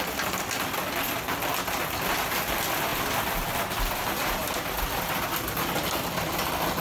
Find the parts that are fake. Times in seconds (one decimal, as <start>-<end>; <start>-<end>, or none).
none

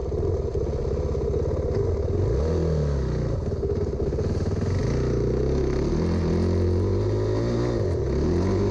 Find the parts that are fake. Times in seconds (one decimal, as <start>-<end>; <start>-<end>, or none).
none

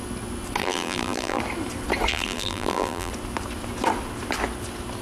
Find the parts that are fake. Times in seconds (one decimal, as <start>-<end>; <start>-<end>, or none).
0.6-1.4; 2.1-3.1

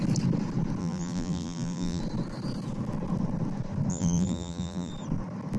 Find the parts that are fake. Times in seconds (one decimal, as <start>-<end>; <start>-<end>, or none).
0.8-2.0; 3.9-4.9

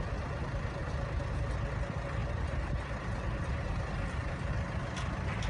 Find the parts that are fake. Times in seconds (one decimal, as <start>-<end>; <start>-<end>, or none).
2.2-4.5

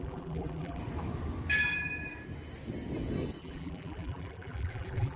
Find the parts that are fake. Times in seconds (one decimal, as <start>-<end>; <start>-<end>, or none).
0.0-0.8; 3.4-5.2

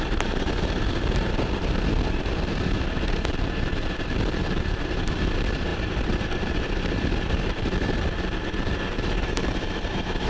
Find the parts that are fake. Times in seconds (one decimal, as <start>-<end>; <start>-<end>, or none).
0.0-10.3